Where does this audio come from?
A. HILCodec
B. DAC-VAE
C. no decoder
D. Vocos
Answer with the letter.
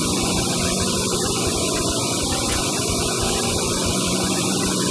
D